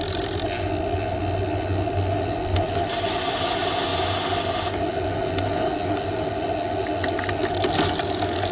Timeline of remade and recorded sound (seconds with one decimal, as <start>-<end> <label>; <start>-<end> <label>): 0.0-8.5 recorded